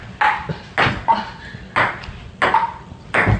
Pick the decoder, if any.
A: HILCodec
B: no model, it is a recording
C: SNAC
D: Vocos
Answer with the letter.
B